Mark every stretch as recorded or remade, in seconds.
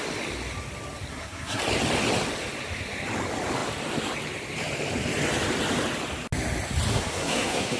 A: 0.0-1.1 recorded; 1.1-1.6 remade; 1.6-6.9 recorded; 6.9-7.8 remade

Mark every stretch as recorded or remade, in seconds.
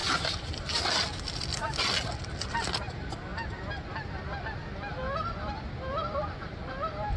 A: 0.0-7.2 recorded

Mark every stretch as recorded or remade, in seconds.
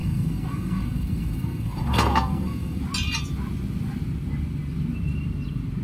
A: 0.0-2.8 remade; 2.8-5.8 recorded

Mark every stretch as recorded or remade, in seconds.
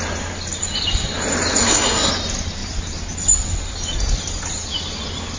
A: 0.0-1.6 recorded; 1.6-2.1 remade; 2.1-5.4 recorded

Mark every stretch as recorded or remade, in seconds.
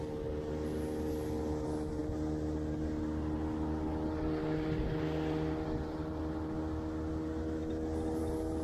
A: 0.0-8.6 recorded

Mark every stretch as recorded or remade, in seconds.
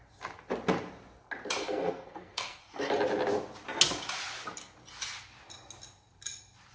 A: 0.0-1.6 recorded; 1.6-2.6 remade; 2.6-6.7 recorded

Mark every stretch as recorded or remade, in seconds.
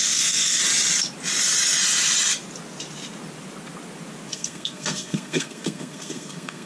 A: 0.0-0.6 remade; 0.6-4.3 recorded; 4.3-6.7 remade